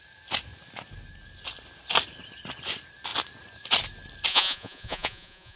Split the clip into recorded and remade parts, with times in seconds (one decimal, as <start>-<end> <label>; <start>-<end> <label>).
0.0-4.3 recorded; 4.3-5.6 remade